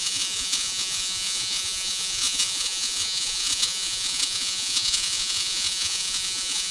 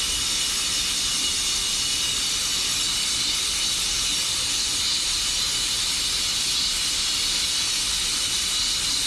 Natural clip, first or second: second